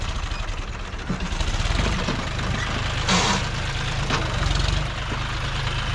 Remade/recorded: recorded